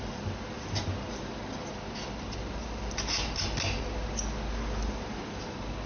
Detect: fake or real real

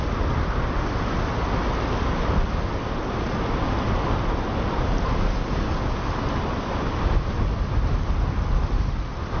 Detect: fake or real real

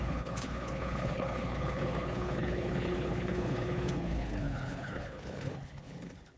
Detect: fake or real fake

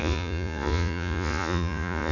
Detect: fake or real fake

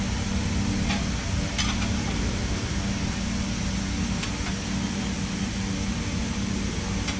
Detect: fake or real real